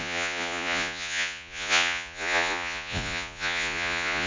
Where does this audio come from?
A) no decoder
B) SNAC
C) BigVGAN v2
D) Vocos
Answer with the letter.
D